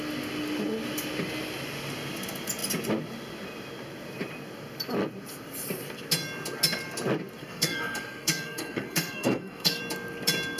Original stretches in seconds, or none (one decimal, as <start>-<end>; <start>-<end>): 0.0-7.4; 9.8-10.6